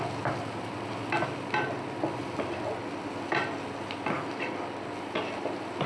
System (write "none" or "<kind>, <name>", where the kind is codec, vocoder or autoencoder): none